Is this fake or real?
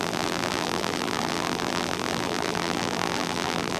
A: fake